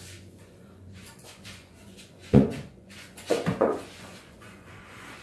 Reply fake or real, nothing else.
fake